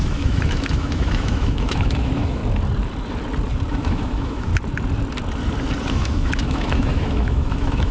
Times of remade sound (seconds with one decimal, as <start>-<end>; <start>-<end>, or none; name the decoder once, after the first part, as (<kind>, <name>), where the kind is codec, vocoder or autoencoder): 0.0-2.4 (autoencoder, DAC-VAE); 3.7-4.5; 5.9-7.9